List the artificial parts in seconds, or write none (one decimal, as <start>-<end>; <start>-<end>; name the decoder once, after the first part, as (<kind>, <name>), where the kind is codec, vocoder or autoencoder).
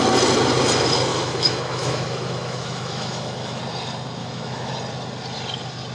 1.1-3.6 (autoencoder, DAC-VAE); 4.2-4.7